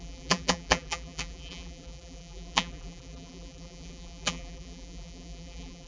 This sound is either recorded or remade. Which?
remade